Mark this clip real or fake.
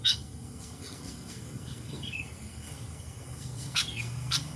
fake